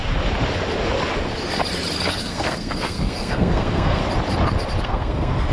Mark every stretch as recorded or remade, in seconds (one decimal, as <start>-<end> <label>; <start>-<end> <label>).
0.0-2.2 recorded; 2.2-4.0 remade; 4.0-4.8 recorded; 4.8-5.5 remade